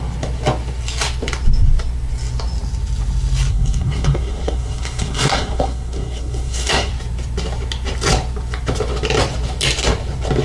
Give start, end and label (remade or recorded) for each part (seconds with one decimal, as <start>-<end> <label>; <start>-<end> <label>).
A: 0.0-3.5 recorded; 3.5-6.9 remade; 6.9-10.4 recorded